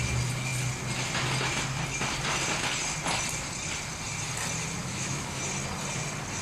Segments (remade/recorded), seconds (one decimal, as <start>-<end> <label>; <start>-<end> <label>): 0.0-4.8 recorded; 4.8-5.4 remade; 5.4-6.4 recorded